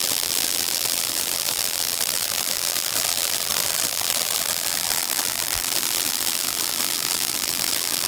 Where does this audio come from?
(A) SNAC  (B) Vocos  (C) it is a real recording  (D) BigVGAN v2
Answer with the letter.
D